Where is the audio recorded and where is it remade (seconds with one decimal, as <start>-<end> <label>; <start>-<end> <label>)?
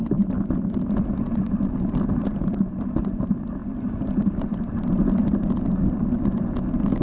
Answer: 0.0-7.0 recorded